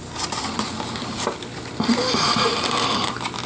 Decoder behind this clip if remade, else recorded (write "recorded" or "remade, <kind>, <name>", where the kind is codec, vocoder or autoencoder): recorded